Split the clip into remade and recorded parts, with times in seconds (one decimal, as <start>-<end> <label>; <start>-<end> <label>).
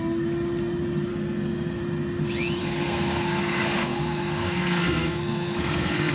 0.0-1.1 recorded; 1.1-1.8 remade; 1.8-2.6 recorded; 2.6-6.1 remade